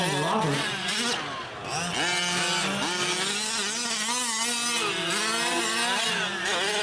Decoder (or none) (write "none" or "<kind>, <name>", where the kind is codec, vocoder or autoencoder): none